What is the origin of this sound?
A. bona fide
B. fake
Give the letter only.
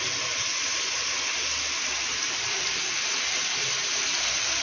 A